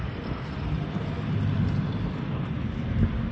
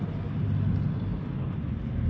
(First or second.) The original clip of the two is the second